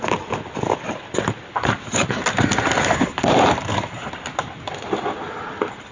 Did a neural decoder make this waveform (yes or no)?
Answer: no